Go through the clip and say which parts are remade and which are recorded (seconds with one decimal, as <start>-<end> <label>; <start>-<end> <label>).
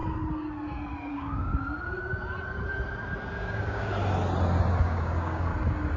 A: 0.0-1.1 recorded; 1.1-1.5 remade; 1.5-3.3 recorded; 3.3-3.9 remade; 3.9-4.8 recorded; 4.8-5.5 remade; 5.5-6.0 recorded